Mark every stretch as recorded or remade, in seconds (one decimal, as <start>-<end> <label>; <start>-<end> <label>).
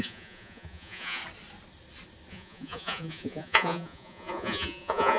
0.0-1.2 remade; 1.2-2.3 recorded; 2.3-5.2 remade